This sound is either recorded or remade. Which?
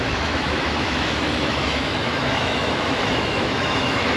remade